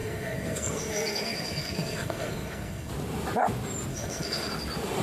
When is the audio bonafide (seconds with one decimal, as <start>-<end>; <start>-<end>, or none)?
2.9-3.9; 4.5-5.0